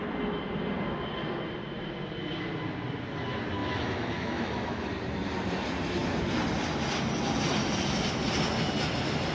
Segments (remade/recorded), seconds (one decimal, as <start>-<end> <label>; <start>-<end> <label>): 0.0-3.6 recorded; 3.6-4.9 remade; 4.9-9.3 recorded